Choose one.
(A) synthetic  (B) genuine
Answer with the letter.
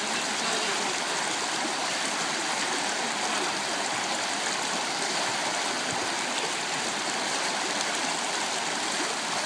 B